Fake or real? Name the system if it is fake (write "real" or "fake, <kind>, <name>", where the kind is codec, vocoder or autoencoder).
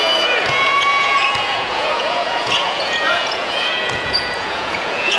fake, vocoder, Vocos